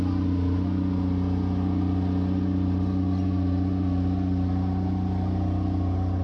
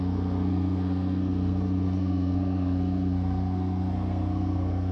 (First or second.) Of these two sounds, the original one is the first